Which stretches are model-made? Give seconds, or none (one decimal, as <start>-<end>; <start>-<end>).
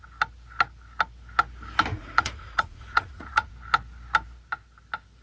1.9-3.5